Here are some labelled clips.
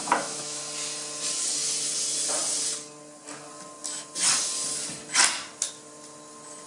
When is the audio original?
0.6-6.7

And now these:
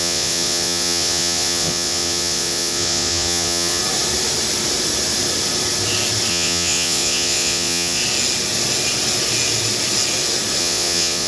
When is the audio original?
3.8-6.3; 8.0-10.6

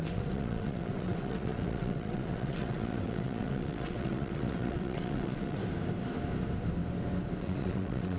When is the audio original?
5.6-7.4

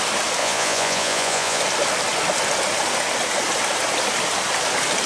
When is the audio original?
0.0-0.4; 1.6-5.1

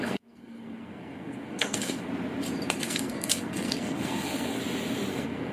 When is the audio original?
2.1-2.8; 4.6-5.1

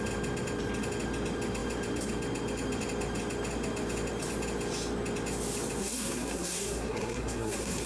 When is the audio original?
0.0-5.8

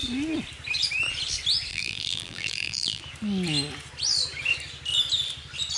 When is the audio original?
0.0-1.7; 3.0-5.8

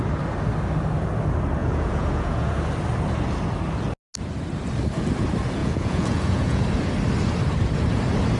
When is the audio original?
0.0-1.6; 2.5-5.6; 6.6-8.4